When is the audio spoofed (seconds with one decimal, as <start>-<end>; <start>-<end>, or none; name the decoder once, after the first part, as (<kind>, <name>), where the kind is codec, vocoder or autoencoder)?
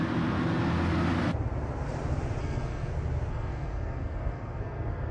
2.4-2.9 (codec, SNAC); 3.3-5.1